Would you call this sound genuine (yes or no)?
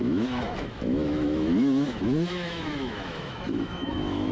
no